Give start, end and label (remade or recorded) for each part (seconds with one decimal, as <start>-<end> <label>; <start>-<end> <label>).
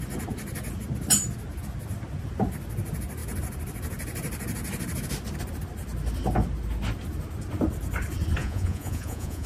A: 0.0-8.4 recorded; 8.4-9.5 remade